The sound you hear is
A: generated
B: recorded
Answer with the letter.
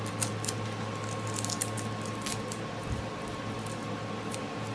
B